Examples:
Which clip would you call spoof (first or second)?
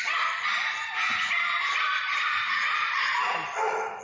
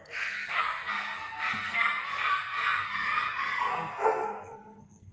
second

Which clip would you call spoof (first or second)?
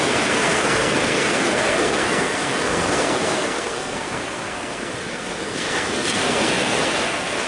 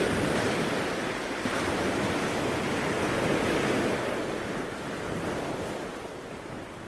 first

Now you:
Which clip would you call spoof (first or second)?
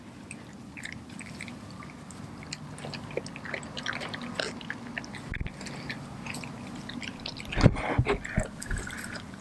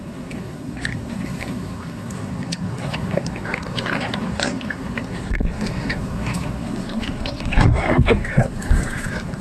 second